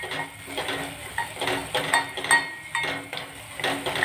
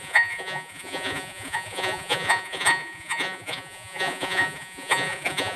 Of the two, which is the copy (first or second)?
second